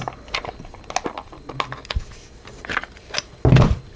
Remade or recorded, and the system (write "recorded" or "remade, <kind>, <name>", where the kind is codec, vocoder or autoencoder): recorded